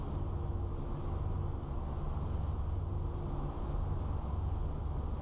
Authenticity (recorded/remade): recorded